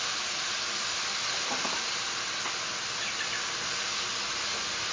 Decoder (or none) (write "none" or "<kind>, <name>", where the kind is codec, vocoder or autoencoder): none